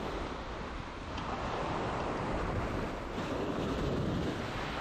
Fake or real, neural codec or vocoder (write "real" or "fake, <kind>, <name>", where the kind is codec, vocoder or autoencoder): real